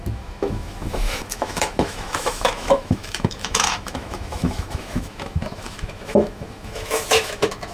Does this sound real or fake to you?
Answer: fake